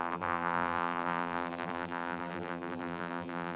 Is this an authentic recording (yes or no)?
no